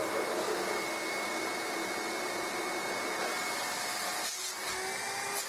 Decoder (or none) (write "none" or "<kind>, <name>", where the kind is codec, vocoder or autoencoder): none